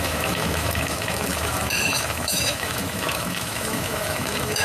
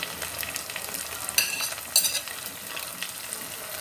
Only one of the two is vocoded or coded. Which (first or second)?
first